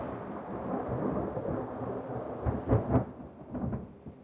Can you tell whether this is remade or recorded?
recorded